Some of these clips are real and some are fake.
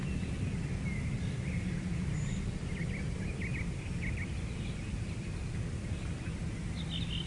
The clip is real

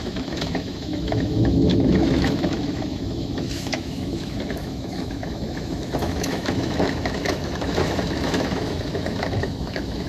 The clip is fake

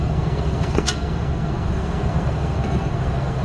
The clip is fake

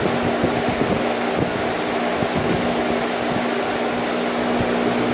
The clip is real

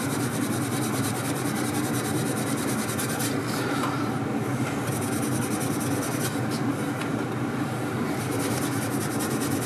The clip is real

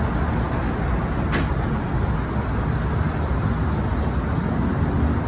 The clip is real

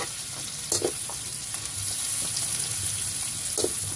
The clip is real